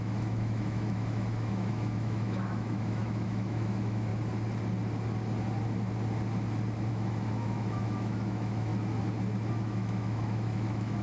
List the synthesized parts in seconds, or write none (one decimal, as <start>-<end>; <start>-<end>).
0.0-4.1; 6.9-8.7; 9.5-11.0